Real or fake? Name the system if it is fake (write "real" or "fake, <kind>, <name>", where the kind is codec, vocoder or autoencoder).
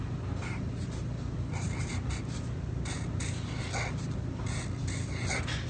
real